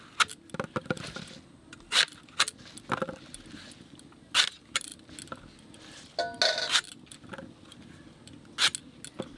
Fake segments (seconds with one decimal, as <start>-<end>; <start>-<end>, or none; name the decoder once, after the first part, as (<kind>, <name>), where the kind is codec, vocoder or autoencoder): none